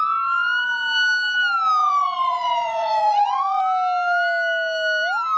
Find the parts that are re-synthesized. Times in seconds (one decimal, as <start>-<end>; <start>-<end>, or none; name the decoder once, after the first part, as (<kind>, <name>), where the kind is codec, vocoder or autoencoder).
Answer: 1.8-3.6 (vocoder, Vocos)